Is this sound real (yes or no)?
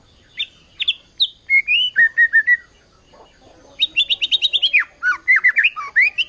yes